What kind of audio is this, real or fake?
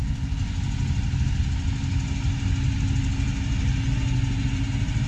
real